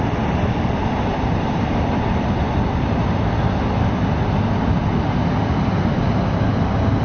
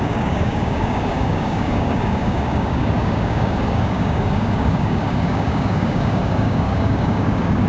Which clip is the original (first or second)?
first